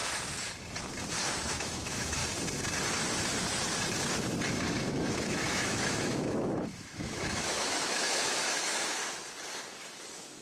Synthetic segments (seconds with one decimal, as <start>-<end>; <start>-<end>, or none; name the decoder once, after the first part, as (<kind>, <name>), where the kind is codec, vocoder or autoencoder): 1.5-2.2 (autoencoder, DAC-VAE); 4.5-9.0; 9.7-10.4